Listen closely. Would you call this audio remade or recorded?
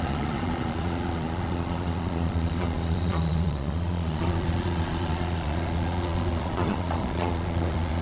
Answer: remade